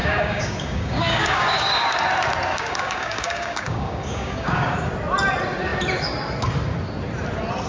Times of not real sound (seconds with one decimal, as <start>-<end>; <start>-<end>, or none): 0.0-2.0; 2.5-4.9